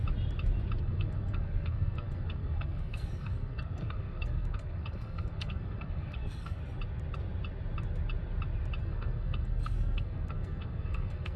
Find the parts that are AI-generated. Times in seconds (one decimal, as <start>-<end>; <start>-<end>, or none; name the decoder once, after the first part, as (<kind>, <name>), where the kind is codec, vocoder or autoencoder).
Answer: 0.8-6.6 (codec, SNAC); 8.8-11.4

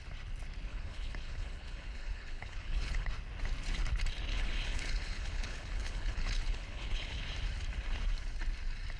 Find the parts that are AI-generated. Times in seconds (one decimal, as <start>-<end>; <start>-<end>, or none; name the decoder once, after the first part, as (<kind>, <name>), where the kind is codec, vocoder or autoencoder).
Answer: 0.7-3.1 (codec, HILCodec); 4.3-7.2

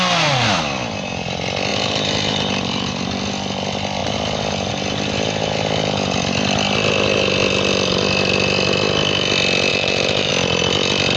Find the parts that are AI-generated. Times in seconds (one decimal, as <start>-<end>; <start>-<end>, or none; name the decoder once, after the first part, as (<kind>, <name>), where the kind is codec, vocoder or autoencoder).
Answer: 1.7-2.9 (vocoder, BigVGAN v2); 9.7-10.3